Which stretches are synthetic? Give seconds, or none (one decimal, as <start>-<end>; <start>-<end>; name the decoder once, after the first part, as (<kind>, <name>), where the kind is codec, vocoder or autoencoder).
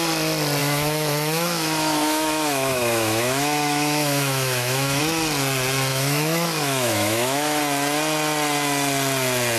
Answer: 0.6-5.0 (autoencoder, DAC-VAE); 5.9-7.6